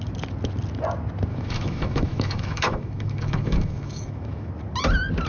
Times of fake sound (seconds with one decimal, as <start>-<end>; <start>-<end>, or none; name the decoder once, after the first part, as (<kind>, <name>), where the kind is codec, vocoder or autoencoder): 1.3-4.5 (autoencoder, DAC-VAE)